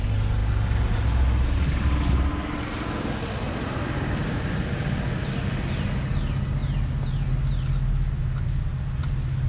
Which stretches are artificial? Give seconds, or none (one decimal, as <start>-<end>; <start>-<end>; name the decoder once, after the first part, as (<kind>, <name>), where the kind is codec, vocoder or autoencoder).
none